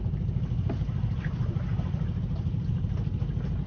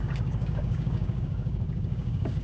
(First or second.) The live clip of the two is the first